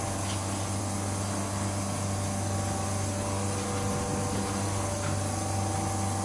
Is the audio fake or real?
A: real